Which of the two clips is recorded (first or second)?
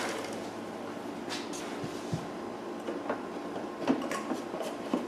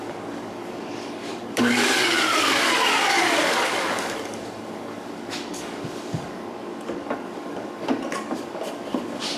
first